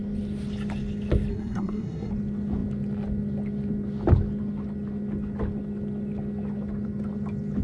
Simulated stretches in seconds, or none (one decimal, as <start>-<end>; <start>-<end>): 1.3-2.1